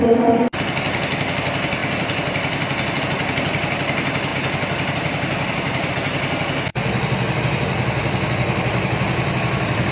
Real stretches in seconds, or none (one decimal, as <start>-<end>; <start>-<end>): 0.0-4.3; 5.9-9.9